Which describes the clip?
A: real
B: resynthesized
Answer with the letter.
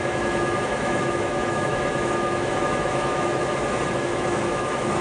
B